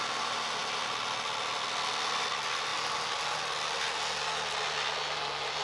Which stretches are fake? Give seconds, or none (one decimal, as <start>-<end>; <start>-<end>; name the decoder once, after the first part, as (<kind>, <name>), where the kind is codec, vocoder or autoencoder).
none